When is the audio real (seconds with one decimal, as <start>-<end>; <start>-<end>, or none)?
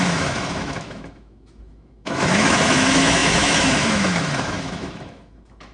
none